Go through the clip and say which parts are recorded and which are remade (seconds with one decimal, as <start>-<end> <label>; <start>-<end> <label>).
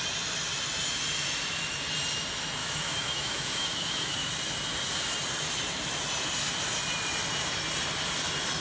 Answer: 0.0-2.6 recorded; 2.6-4.3 remade; 4.3-8.6 recorded